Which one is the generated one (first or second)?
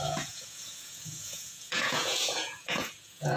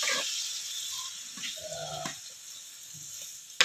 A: first